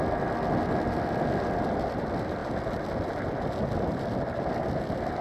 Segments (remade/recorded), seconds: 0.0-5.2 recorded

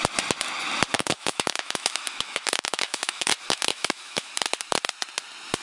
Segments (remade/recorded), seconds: 0.0-0.9 recorded; 0.9-3.3 remade; 3.3-3.7 recorded; 3.7-4.3 remade; 4.3-5.6 recorded